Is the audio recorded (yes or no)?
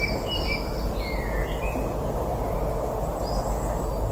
yes